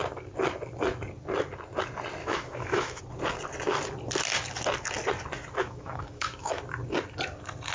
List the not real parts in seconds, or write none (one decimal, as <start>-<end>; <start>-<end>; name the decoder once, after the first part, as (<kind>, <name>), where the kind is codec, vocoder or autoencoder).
2.2-3.0 (autoencoder, DAC-VAE); 5.6-6.6